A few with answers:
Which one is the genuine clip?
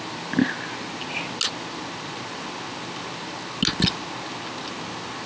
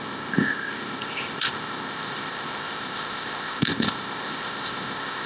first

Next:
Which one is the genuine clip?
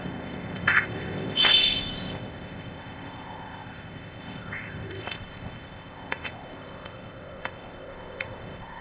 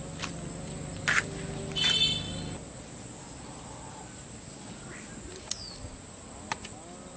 second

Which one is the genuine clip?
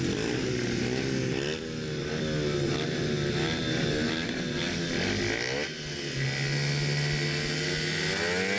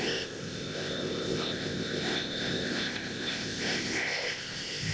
first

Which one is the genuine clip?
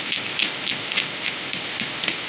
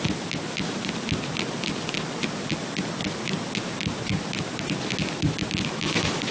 second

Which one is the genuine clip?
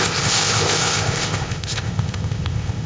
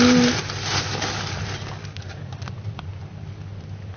second